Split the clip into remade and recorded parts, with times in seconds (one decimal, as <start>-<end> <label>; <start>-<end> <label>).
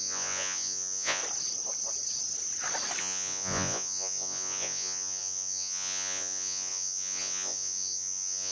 0.0-1.2 remade; 1.2-3.0 recorded; 3.0-8.5 remade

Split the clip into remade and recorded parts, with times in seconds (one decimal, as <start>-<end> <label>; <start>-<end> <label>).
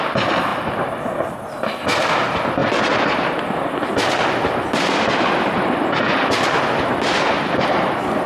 0.0-8.3 recorded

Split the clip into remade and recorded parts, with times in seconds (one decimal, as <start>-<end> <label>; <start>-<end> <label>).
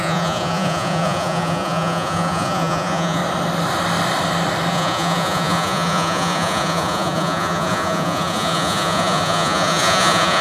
0.0-3.2 remade; 3.2-4.7 recorded; 4.7-10.4 remade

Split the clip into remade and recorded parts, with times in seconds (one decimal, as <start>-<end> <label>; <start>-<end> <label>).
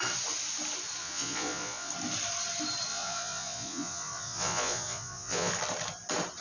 0.0-1.0 recorded; 1.0-1.9 remade; 1.9-2.9 recorded; 2.9-5.5 remade; 5.5-6.4 recorded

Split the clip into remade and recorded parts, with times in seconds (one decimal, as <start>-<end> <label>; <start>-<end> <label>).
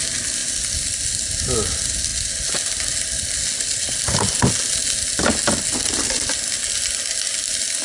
0.0-7.8 recorded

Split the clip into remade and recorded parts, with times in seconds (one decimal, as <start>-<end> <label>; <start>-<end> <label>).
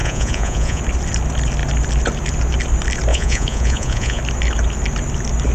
0.0-0.8 remade; 0.8-3.1 recorded; 3.1-4.2 remade; 4.2-5.5 recorded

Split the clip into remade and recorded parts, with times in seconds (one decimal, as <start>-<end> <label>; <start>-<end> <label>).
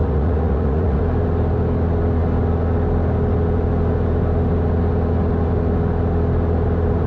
0.0-1.0 remade; 1.0-7.1 recorded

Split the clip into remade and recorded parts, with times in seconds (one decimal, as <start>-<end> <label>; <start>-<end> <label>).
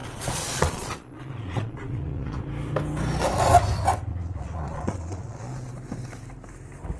0.0-2.4 remade; 2.4-4.1 recorded; 4.1-5.7 remade; 5.7-7.0 recorded